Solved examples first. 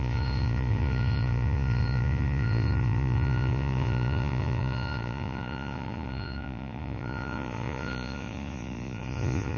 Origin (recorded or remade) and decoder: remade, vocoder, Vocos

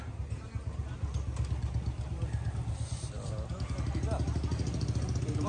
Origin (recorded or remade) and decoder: recorded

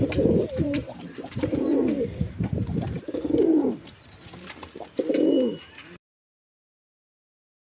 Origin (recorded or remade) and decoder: remade, vocoder, BigVGAN v2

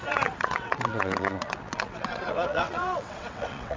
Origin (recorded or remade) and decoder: remade, vocoder, WaveNeXt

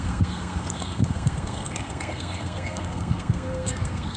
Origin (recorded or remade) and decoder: remade, codec, SNAC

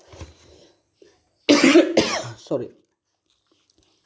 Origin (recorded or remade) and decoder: recorded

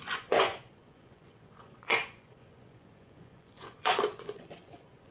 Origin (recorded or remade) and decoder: remade, vocoder, Vocos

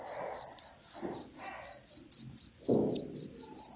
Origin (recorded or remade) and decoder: recorded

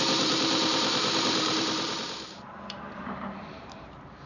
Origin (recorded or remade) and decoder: remade, vocoder, BigVGAN v2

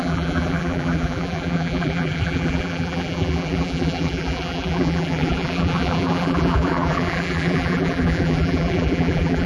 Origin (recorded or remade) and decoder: remade, vocoder, BigVGAN v2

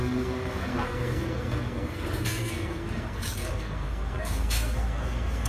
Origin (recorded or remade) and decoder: remade, codec, SNAC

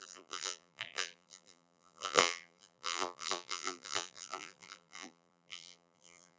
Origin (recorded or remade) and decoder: remade, vocoder, BigVGAN v2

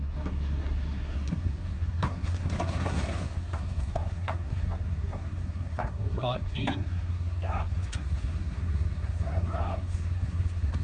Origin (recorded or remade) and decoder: remade, codec, SNAC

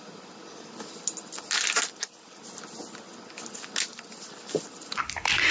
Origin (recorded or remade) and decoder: recorded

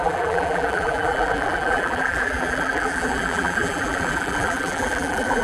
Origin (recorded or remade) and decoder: remade, vocoder, BigVGAN v2